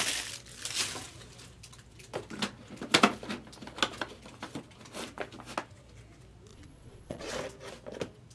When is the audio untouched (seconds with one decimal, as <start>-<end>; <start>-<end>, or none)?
0.0-6.5; 7.3-8.3